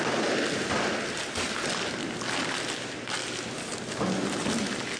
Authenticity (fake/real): real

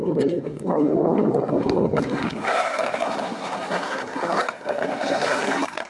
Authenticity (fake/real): fake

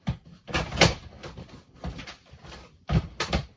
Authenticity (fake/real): real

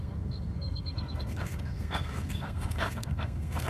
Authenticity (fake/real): fake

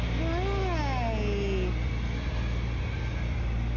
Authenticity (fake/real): real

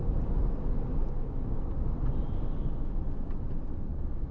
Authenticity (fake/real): real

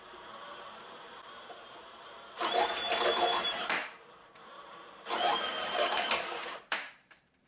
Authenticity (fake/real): fake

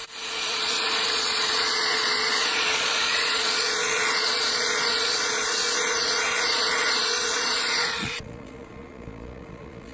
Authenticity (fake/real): fake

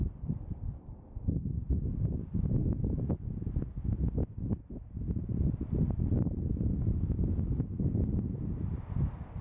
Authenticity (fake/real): real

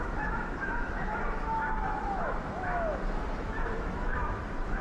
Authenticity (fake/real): fake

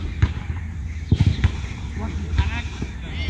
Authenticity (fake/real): real